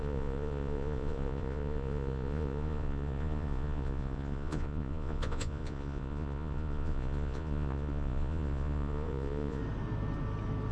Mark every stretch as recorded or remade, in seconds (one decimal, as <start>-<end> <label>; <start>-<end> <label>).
0.0-9.6 remade; 9.6-10.7 recorded